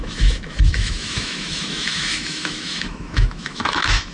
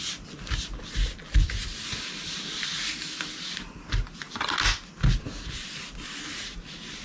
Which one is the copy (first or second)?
first